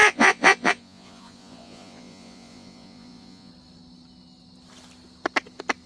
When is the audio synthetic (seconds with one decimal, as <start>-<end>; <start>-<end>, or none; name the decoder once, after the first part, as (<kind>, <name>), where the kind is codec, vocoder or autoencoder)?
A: 0.0-3.5 (vocoder, Vocos)